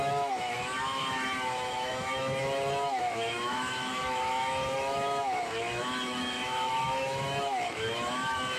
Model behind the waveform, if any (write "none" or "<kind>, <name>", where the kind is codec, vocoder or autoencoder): autoencoder, DAC-VAE